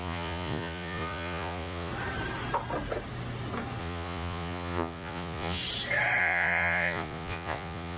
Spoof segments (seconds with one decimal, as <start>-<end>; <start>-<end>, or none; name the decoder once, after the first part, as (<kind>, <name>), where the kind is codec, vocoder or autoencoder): 0.0-1.9 (vocoder, Vocos); 3.8-5.6; 6.2-8.0